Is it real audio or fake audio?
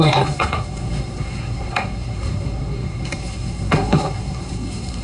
fake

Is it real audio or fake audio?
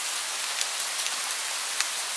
real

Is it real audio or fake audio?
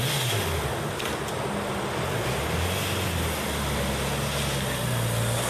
real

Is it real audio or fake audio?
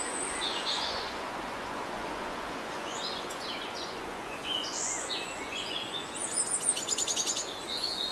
fake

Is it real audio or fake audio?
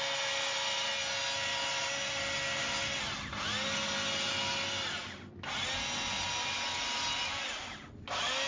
real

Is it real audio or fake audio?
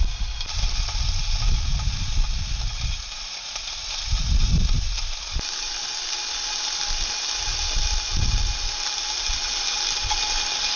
real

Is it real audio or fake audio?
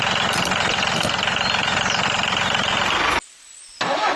real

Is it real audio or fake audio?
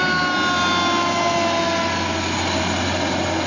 real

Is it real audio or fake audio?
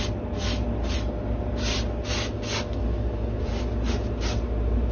real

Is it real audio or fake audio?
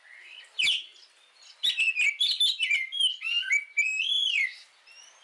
real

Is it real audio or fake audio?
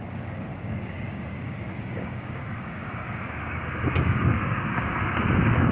fake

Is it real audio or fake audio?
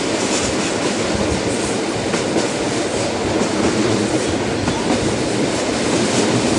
real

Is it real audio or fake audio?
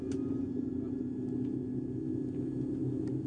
real